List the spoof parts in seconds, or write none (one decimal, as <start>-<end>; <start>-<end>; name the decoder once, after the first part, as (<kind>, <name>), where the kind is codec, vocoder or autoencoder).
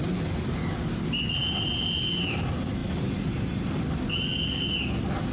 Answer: 2.8-3.8 (vocoder, BigVGAN v2)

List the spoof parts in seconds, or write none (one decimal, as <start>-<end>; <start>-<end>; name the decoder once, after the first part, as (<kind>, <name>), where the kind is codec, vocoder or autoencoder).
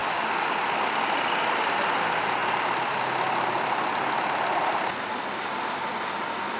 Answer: 0.0-0.5 (autoencoder, DAC-VAE)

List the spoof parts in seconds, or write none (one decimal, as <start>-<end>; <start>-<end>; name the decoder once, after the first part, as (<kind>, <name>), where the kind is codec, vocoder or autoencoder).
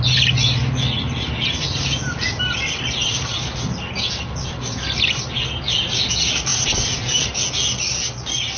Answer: 3.0-3.6 (vocoder, BigVGAN v2)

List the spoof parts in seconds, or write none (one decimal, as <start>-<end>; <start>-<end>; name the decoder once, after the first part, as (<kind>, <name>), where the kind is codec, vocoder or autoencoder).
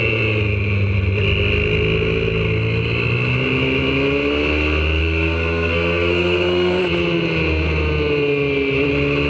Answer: 5.0-6.8 (codec, SNAC)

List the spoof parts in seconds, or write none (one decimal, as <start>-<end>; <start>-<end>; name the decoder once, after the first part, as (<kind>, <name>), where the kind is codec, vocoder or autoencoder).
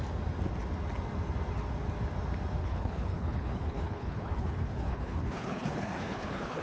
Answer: 2.6-6.6 (codec, HILCodec)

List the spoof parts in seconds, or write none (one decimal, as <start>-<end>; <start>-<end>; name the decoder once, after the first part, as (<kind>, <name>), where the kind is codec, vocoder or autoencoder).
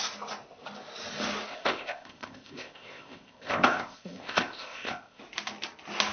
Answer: 1.5-5.2 (codec, ZipCodec)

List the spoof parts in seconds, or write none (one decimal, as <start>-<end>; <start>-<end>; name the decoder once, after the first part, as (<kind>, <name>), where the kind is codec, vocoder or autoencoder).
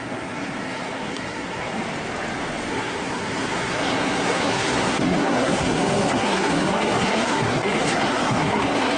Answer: 0.0-1.8 (codec, SNAC); 2.7-9.0